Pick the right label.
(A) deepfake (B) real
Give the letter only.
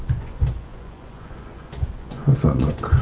A